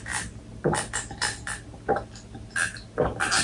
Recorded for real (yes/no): yes